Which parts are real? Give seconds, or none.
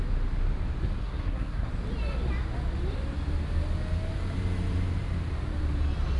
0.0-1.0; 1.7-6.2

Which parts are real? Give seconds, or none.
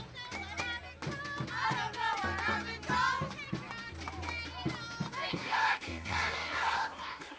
0.0-5.3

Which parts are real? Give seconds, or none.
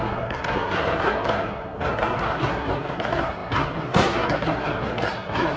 none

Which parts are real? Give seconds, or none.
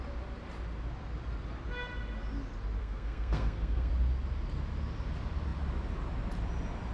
0.0-2.8; 3.9-6.9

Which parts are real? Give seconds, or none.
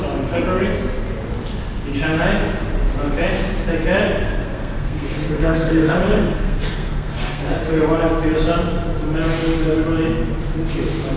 0.0-4.2; 7.6-11.2